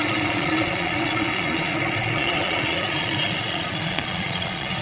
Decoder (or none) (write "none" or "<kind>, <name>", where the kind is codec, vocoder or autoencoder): vocoder, Vocos